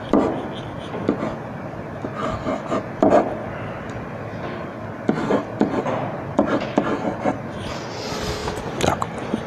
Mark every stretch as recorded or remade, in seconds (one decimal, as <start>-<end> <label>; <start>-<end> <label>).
0.0-9.5 recorded